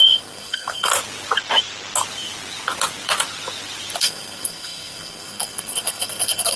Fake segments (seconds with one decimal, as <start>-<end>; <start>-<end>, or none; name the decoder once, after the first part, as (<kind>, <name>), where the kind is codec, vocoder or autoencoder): 0.0-0.9 (codec, SNAC); 4.0-6.6